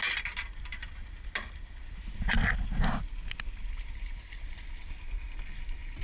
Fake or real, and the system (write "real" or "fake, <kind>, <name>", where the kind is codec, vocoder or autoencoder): real